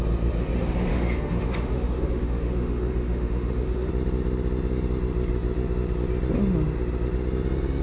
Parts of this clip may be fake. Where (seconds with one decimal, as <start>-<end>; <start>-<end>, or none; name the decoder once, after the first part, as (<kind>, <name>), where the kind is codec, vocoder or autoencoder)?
0.9-3.9 (autoencoder, DAC-VAE)